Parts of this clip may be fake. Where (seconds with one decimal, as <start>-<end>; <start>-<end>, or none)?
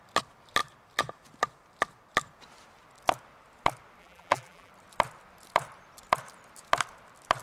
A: 4.0-4.7